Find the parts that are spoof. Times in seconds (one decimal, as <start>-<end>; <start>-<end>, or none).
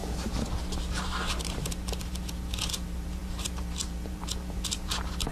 0.6-5.3